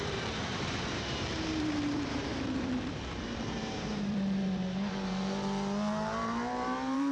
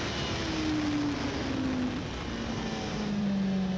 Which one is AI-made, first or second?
first